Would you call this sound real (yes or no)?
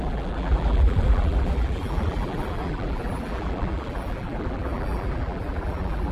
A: no